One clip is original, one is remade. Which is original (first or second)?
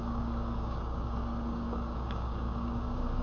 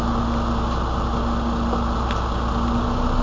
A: second